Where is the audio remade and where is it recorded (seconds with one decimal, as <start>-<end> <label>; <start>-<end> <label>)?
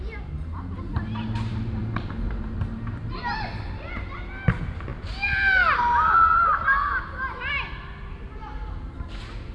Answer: 0.0-0.9 recorded; 0.9-3.2 remade; 3.2-9.5 recorded